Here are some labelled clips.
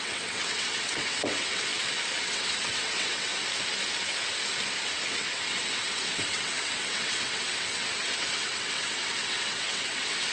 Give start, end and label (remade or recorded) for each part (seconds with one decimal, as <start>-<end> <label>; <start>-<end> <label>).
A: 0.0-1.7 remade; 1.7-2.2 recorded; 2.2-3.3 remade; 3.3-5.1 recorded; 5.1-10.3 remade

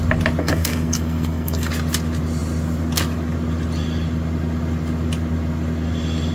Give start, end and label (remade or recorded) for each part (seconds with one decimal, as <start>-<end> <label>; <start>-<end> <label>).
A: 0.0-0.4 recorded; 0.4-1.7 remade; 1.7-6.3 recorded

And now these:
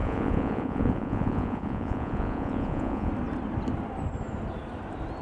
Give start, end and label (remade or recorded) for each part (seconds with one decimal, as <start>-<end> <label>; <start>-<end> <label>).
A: 0.0-3.1 remade; 3.1-5.2 recorded

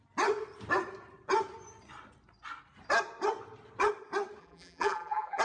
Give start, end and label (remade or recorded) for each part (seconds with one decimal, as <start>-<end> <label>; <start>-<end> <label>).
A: 0.0-4.4 recorded; 4.4-5.4 remade

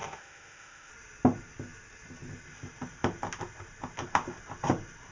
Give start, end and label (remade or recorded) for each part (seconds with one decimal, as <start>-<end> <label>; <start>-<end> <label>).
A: 0.0-0.9 remade; 0.9-5.1 recorded

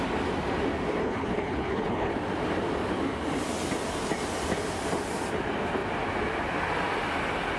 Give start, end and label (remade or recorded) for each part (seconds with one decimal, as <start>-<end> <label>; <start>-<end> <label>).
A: 0.0-1.0 recorded; 1.0-2.1 remade; 2.1-7.6 recorded